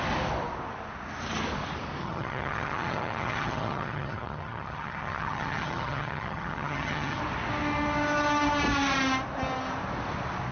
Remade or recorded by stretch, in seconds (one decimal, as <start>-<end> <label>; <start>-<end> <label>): 0.0-2.0 recorded; 2.0-7.2 remade; 7.2-10.5 recorded